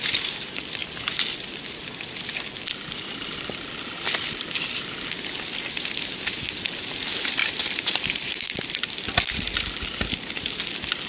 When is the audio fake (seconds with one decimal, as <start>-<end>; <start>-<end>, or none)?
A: 7.4-8.5